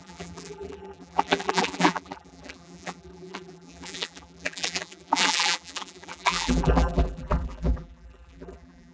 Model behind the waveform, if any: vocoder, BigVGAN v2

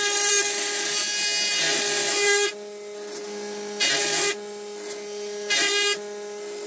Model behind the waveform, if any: none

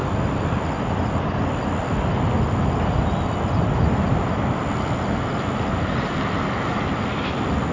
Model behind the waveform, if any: none